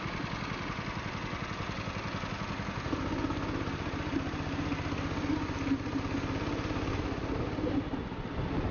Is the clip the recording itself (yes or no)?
yes